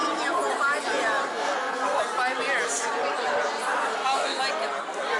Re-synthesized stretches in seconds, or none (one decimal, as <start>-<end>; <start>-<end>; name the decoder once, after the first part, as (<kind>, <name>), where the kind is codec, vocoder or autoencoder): 1.3-2.0 (codec, SNAC); 3.9-4.4